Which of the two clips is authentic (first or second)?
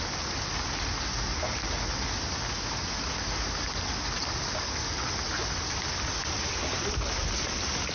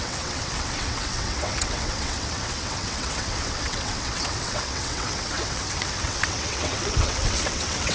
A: first